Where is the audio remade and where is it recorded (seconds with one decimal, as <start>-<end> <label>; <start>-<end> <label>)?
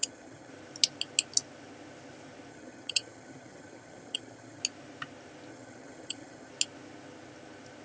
0.0-0.5 remade; 0.5-2.5 recorded; 2.5-4.6 remade; 4.6-5.5 recorded; 5.5-6.5 remade; 6.5-7.8 recorded